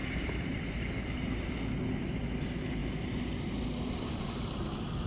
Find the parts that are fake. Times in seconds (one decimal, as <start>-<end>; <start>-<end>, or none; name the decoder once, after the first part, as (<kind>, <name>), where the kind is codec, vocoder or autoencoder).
0.0-1.5 (vocoder, BigVGAN v2)